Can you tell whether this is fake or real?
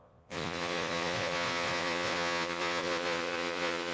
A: fake